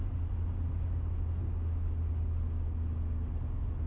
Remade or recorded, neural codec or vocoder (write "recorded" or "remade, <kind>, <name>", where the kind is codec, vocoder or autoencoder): recorded